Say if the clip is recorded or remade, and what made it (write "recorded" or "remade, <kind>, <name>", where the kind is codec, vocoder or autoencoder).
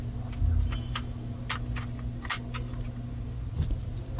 recorded